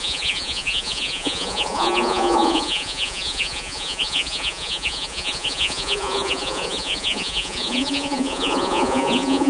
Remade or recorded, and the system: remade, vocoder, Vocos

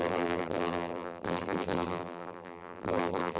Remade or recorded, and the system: remade, vocoder, BigVGAN v2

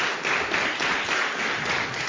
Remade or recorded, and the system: recorded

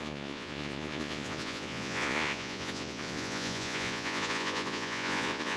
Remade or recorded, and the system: remade, vocoder, Vocos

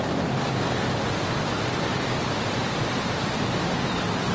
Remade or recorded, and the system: recorded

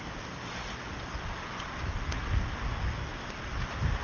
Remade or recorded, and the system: recorded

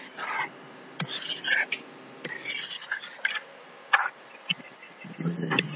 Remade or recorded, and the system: recorded